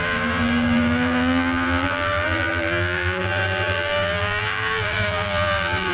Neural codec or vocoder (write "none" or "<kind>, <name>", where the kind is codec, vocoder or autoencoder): vocoder, BigVGAN v2